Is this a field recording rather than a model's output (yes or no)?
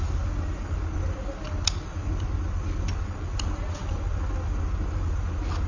yes